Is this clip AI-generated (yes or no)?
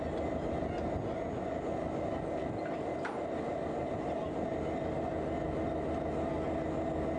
no